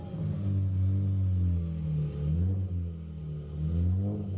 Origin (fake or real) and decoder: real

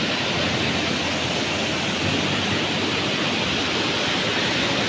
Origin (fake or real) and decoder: real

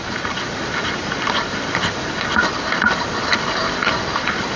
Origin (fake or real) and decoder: fake, vocoder, BigVGAN v2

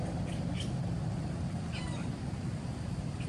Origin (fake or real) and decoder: real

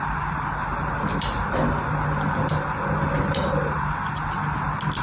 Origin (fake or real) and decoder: real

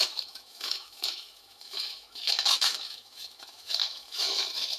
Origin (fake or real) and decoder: fake, autoencoder, DAC-VAE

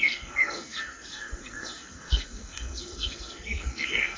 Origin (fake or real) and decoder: fake, codec, SNAC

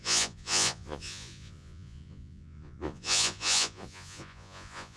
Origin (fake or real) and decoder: fake, vocoder, Vocos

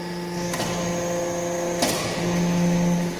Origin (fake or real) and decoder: real